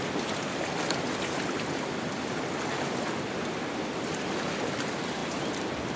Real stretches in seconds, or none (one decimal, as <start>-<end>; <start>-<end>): 0.0-6.0